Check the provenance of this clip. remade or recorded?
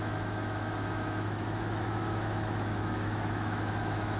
remade